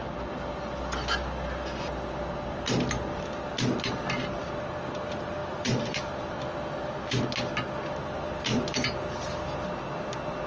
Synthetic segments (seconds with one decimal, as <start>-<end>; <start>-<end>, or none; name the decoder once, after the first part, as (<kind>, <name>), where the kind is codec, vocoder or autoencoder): 5.4-7.2 (vocoder, BigVGAN v2)